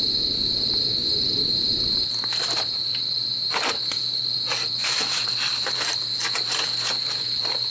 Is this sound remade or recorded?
recorded